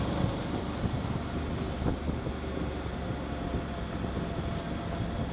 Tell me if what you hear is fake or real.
real